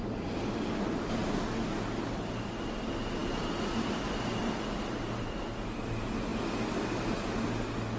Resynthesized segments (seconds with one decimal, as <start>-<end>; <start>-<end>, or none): none